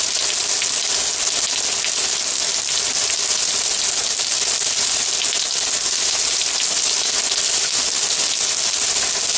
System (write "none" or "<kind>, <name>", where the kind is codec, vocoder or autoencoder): none